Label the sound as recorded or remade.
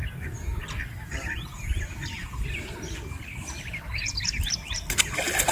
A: recorded